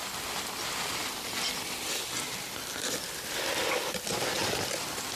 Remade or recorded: recorded